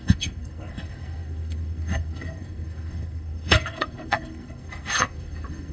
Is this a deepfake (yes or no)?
yes